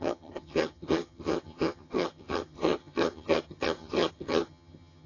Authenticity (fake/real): fake